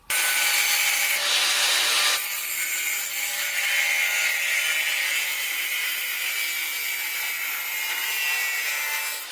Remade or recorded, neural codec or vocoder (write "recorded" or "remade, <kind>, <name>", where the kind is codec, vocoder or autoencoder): recorded